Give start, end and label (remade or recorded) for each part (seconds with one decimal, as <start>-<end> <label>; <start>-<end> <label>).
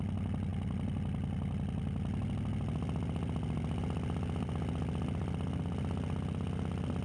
0.0-7.0 recorded